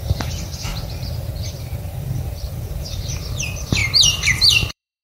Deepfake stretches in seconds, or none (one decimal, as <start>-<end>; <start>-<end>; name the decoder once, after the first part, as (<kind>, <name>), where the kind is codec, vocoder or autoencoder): 0.0-0.7 (vocoder, BigVGAN v2); 1.6-5.0